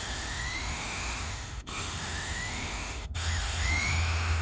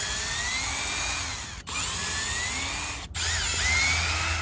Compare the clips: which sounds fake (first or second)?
first